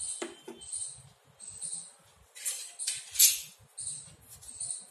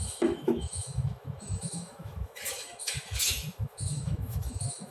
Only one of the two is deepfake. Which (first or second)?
second